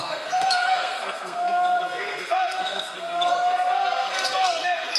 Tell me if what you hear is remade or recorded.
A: remade